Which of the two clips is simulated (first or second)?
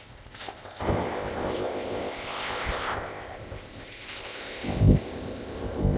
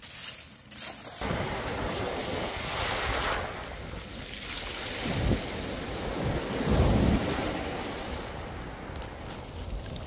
first